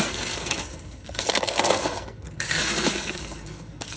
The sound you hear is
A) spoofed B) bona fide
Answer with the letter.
A